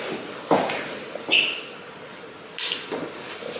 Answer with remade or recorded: recorded